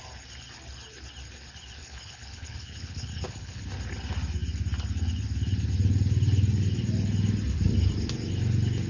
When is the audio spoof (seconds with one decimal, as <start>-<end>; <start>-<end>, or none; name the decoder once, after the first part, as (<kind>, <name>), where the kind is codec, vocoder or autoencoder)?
1.8-3.6 (codec, HILCodec)